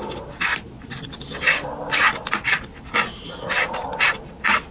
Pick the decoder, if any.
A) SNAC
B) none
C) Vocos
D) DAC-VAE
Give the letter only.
B